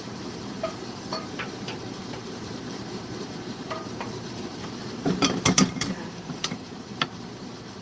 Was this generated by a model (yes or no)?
yes